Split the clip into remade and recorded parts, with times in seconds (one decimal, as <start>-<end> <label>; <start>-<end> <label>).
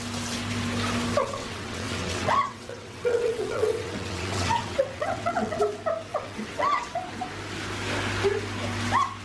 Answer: 0.0-1.2 recorded; 1.2-5.6 remade; 5.6-6.1 recorded; 6.1-6.9 remade; 6.9-9.2 recorded